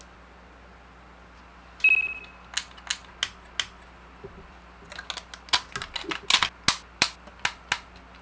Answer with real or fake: real